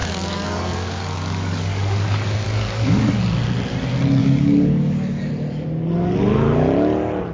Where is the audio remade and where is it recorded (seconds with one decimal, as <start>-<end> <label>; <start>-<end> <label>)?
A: 0.0-3.2 remade; 3.2-4.2 recorded; 4.2-5.3 remade; 5.3-7.3 recorded